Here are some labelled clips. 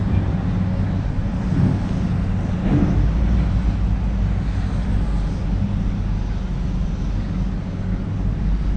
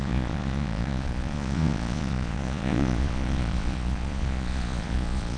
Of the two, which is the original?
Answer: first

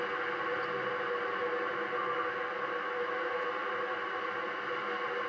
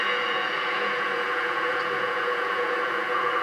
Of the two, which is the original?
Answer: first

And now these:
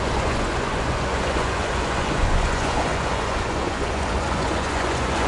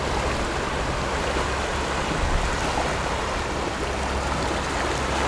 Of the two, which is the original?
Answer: second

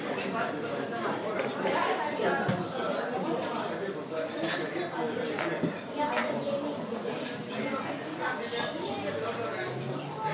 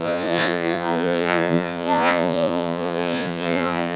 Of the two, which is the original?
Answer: first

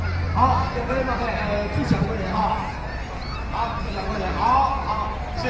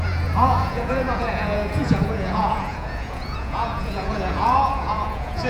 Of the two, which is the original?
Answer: first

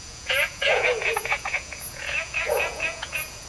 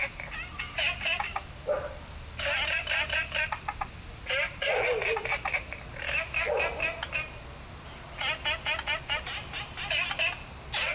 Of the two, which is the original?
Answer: second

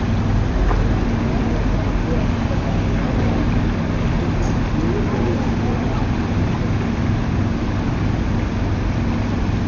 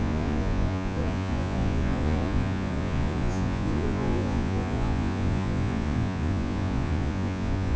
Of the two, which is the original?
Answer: first